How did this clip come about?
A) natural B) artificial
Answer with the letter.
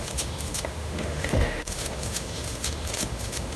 B